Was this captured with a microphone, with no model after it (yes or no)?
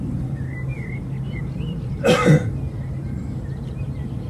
no